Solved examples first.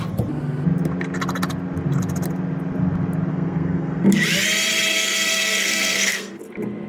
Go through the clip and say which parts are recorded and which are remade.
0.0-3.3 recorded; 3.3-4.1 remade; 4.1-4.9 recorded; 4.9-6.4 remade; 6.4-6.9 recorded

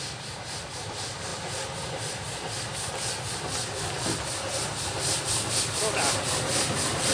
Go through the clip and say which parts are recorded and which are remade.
0.0-7.1 recorded